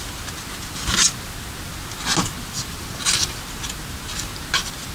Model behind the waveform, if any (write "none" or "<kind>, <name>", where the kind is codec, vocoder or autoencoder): none